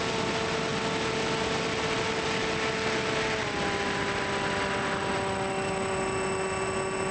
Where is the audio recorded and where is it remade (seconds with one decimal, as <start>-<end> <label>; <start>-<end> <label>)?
0.0-7.1 recorded